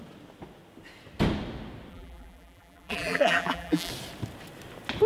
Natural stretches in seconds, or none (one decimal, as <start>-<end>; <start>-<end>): 0.0-1.9; 3.9-5.1